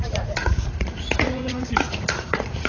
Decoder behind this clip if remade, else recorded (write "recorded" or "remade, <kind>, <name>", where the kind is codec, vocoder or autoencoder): remade, vocoder, Vocos